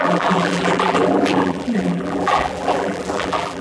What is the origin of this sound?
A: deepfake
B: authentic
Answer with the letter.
A